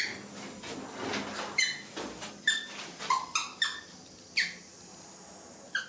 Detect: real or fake real